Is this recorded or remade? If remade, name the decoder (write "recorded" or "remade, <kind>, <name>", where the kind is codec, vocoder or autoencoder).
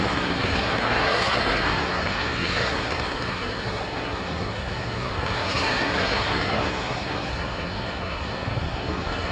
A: remade, codec, SNAC